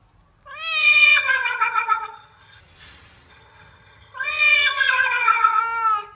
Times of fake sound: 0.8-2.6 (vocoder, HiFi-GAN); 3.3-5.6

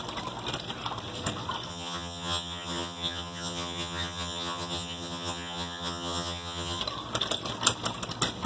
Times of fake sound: 1.7-6.8 (vocoder, HiFi-GAN)

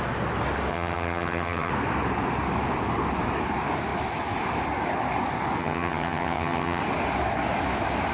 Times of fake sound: 0.7-1.7 (vocoder, HiFi-GAN); 5.6-6.8

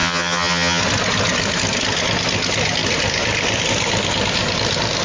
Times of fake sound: 0.0-0.8 (vocoder, HiFi-GAN)

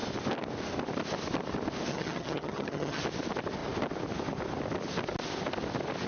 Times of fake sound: 1.9-3.0 (vocoder, HiFi-GAN)